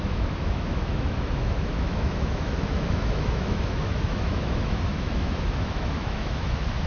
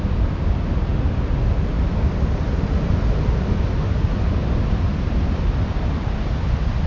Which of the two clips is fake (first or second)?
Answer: first